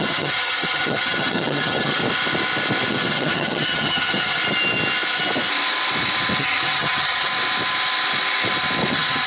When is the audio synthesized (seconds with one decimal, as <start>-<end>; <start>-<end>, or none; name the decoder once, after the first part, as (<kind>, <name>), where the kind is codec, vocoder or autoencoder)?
0.0-2.0 (vocoder, HiFi-GAN); 2.9-4.4; 6.4-7.3; 8.9-9.3